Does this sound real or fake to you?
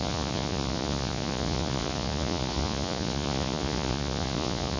fake